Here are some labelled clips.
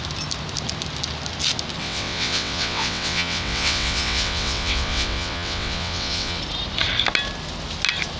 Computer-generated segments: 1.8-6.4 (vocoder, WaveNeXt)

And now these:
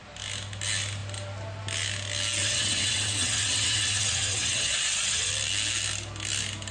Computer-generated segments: 2.4-5.3 (vocoder, WaveNeXt)

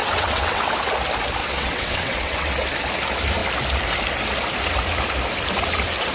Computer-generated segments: 0.0-0.6 (vocoder, WaveNeXt); 1.4-2.5